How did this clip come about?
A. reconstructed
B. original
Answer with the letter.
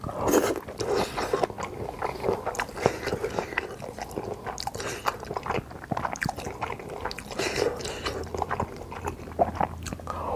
B